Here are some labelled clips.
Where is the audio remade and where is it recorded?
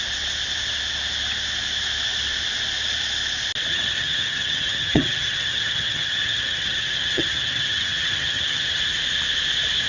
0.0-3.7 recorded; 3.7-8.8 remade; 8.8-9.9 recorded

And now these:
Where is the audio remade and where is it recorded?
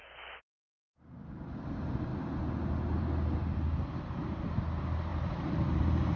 0.0-6.2 recorded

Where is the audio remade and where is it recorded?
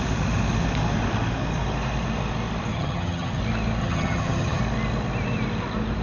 0.0-2.7 recorded; 2.7-3.4 remade; 3.4-3.8 recorded; 3.8-4.6 remade; 4.6-6.0 recorded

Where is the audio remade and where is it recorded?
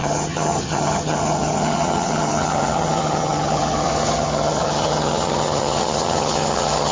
0.0-6.9 remade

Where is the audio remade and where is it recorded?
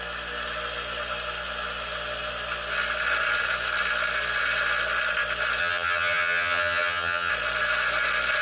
0.0-5.6 recorded; 5.6-7.3 remade; 7.3-8.4 recorded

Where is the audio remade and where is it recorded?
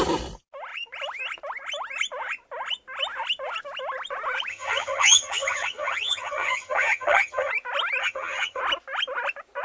0.0-4.5 recorded; 4.5-7.5 remade; 7.5-8.0 recorded; 8.0-8.6 remade; 8.6-9.6 recorded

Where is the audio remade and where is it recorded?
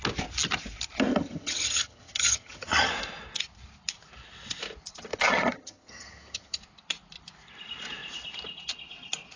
0.0-1.1 recorded; 1.1-2.9 remade; 2.9-5.1 recorded; 5.1-6.6 remade; 6.6-9.4 recorded